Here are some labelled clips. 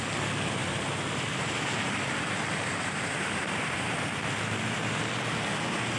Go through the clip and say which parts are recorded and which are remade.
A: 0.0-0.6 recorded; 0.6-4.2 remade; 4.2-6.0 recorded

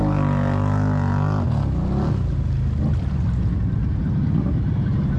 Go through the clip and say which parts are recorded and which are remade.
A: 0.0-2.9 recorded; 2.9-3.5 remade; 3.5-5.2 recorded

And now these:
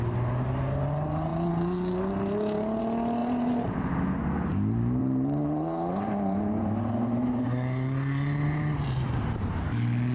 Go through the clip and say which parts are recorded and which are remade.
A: 0.0-3.2 recorded; 3.2-3.8 remade; 3.8-5.0 recorded; 5.0-9.7 remade; 9.7-10.1 recorded

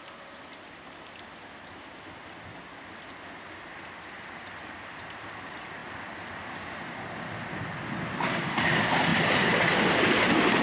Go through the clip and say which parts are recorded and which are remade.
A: 0.0-10.6 recorded

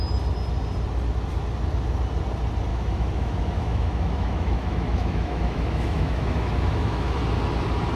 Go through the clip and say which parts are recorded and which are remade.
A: 0.0-2.7 recorded; 2.7-7.2 remade; 7.2-8.0 recorded